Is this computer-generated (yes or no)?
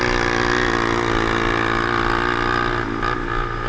no